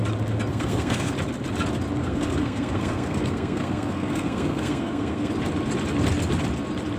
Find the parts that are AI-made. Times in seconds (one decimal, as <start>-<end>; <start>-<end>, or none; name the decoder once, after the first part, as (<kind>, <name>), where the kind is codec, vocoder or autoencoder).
0.5-1.1 (codec, SNAC); 2.0-5.3